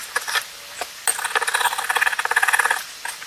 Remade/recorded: recorded